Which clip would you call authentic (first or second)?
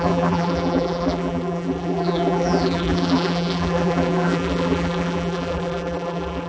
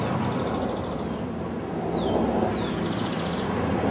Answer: second